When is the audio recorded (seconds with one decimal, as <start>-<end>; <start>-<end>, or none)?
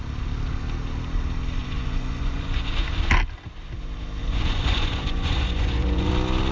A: 0.0-1.6; 2.7-4.2; 6.1-6.5